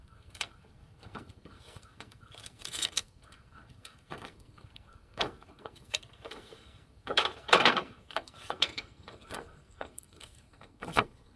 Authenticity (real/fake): fake